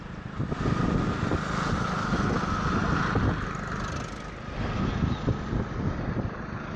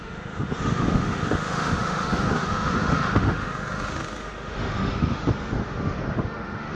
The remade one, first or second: second